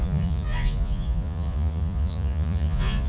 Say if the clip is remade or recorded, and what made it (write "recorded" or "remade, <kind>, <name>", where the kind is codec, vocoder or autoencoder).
remade, vocoder, Vocos